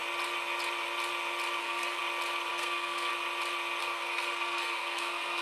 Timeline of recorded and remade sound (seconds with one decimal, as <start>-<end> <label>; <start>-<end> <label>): 0.0-1.6 recorded; 1.6-2.0 remade; 2.0-2.5 recorded; 2.5-3.1 remade; 3.1-3.8 recorded; 3.8-5.4 remade